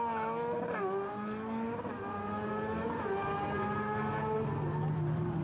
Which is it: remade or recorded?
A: recorded